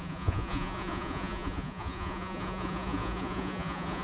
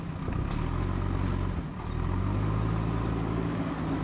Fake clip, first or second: first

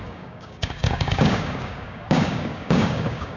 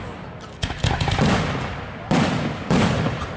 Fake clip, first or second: first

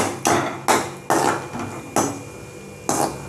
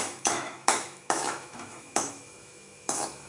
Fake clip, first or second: second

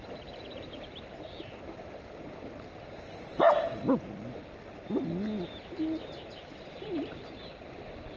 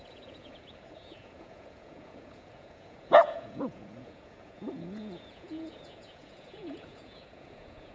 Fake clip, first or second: second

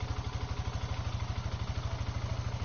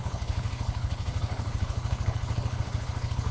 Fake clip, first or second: second